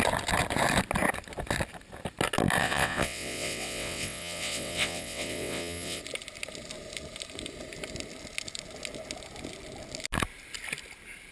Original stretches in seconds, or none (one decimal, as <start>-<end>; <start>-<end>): 0.0-2.6; 6.0-11.3